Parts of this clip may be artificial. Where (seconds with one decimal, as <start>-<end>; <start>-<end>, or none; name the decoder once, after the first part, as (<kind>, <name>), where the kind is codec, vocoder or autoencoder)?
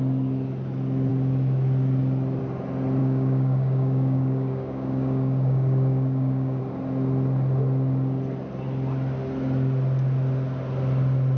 3.0-6.6 (codec, DAC)